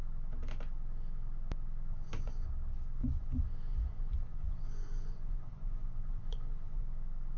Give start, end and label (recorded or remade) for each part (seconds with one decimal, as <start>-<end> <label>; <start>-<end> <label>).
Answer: 0.0-1.9 recorded; 1.9-2.5 remade; 2.5-3.0 recorded; 3.0-6.8 remade; 6.8-7.4 recorded